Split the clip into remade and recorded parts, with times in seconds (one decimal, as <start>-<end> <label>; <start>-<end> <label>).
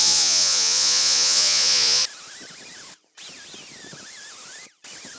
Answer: 0.0-2.0 remade; 2.0-5.2 recorded